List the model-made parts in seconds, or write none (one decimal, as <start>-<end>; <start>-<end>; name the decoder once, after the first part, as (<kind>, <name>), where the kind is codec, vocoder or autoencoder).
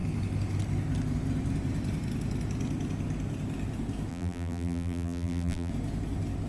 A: 4.1-5.7 (vocoder, BigVGAN v2)